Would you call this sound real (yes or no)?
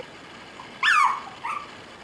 yes